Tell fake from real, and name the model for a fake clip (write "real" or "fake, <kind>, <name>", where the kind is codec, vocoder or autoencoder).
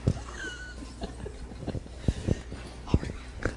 real